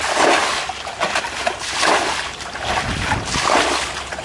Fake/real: real